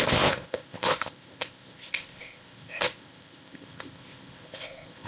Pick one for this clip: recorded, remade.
remade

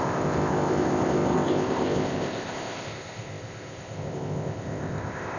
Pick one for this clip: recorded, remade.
remade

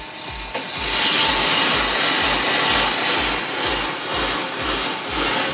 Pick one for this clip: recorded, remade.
recorded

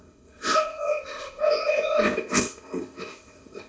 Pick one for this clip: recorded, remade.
remade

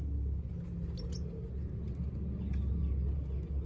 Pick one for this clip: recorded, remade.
recorded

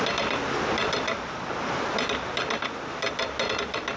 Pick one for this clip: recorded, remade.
recorded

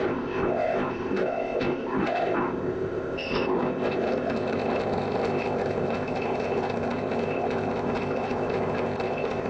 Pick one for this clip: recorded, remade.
remade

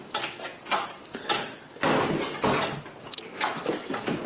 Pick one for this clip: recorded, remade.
recorded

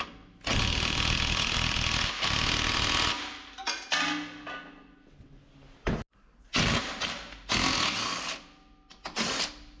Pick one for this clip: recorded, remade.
recorded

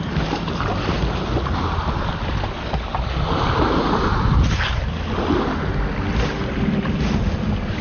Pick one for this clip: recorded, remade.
recorded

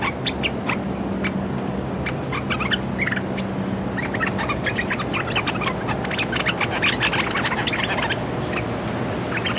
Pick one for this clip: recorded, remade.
recorded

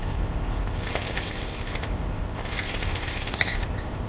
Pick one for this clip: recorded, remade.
remade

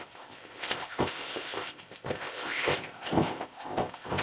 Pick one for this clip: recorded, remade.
remade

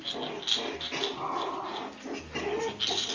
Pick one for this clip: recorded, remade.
recorded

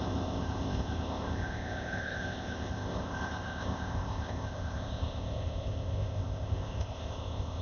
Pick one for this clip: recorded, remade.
remade